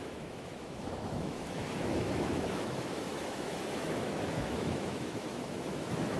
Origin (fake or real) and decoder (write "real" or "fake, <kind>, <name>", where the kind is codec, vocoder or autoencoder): fake, autoencoder, DAC-VAE